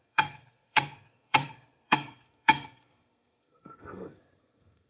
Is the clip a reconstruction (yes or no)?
yes